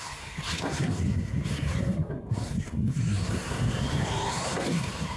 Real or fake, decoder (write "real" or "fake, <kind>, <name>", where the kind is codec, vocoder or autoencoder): fake, codec, SNAC